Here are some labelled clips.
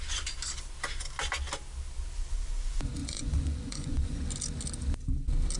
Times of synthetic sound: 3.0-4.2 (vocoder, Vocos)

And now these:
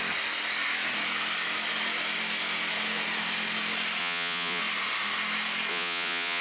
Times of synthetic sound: 4.0-4.6 (vocoder, Vocos); 5.7-6.4

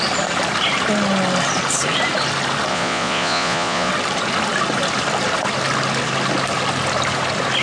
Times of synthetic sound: 2.7-3.9 (vocoder, Vocos)

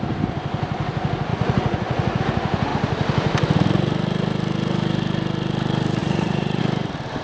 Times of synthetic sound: 1.3-2.2 (vocoder, Vocos); 6.0-6.6

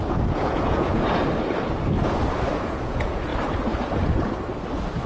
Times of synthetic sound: 0.0-1.2 (vocoder, Vocos); 2.5-3.3

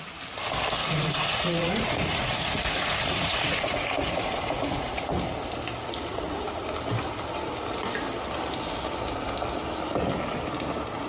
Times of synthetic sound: 0.8-5.2 (vocoder, Vocos); 6.1-6.6

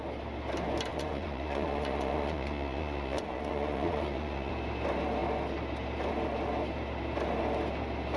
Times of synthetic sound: 0.9-4.5 (vocoder, Vocos)

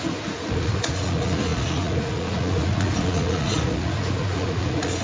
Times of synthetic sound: 0.0-5.0 (vocoder, Vocos)